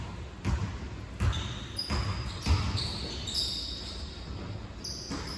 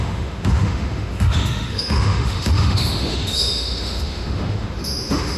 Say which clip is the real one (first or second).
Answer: first